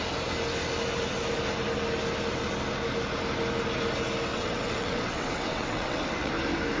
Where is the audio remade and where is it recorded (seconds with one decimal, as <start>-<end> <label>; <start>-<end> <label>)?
0.0-4.3 recorded; 4.3-6.3 remade; 6.3-6.8 recorded